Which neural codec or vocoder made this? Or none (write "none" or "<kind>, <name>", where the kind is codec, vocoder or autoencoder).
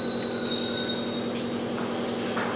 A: none